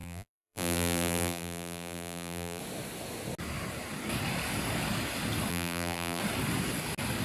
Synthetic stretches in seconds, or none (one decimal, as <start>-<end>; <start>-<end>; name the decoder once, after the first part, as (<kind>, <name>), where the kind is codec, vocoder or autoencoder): 0.0-2.6 (vocoder, BigVGAN v2); 5.5-6.2